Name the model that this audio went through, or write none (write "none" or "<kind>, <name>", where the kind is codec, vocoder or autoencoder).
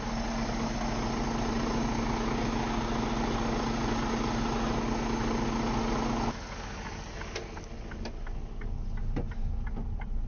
none